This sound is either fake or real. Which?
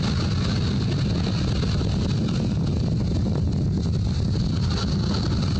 real